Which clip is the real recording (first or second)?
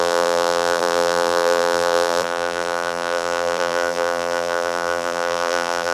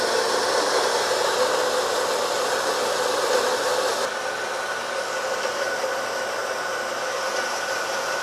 second